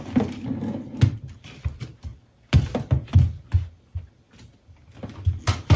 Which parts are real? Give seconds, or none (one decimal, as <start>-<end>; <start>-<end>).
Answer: 0.0-5.8